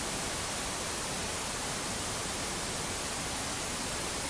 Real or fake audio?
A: real